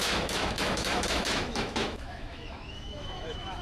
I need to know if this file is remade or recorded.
remade